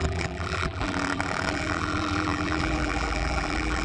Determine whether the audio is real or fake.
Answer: fake